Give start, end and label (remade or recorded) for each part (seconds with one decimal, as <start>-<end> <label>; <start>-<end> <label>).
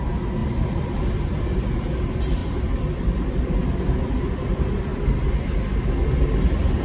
0.0-0.4 recorded; 0.4-1.2 remade; 1.2-2.4 recorded; 2.4-4.0 remade; 4.0-4.9 recorded; 4.9-5.5 remade; 5.5-6.8 recorded